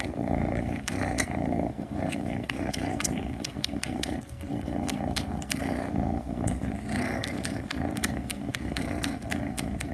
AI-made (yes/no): yes